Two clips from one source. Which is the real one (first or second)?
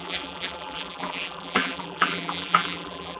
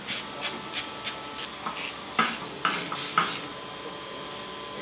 second